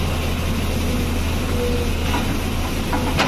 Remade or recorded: recorded